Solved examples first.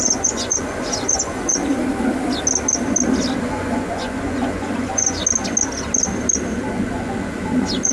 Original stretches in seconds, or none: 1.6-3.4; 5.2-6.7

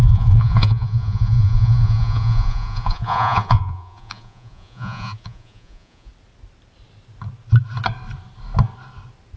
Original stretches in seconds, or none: 6.1-9.4

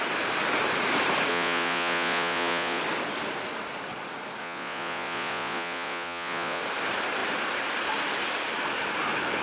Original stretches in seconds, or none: 0.0-1.3; 2.8-4.4; 6.6-9.4

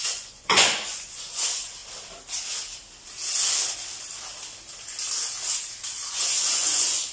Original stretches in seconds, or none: 1.8-6.1